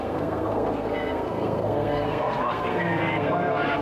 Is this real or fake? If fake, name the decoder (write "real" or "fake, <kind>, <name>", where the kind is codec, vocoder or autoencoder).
fake, codec, SNAC